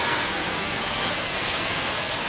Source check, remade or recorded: remade